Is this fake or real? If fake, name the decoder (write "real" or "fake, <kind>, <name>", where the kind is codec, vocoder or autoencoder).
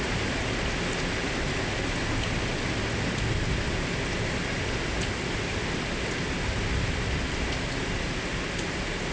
real